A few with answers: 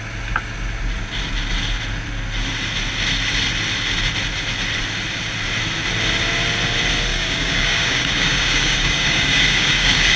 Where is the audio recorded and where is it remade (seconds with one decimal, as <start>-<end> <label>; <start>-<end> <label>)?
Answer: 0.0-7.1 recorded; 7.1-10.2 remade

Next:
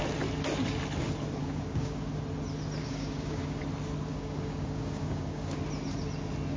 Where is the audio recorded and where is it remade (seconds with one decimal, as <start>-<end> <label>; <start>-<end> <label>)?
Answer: 0.0-1.4 recorded; 1.4-2.1 remade; 2.1-2.8 recorded; 2.8-3.6 remade; 3.6-4.1 recorded; 4.1-5.5 remade; 5.5-6.6 recorded

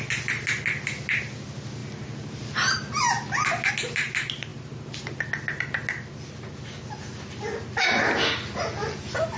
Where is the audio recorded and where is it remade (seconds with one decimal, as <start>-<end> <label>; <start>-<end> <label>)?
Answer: 0.0-9.4 recorded